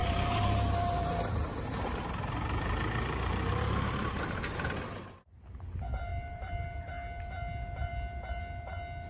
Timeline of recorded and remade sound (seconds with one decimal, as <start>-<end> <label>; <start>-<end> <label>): 0.0-4.4 remade; 4.4-6.1 recorded; 6.1-6.9 remade; 6.9-9.1 recorded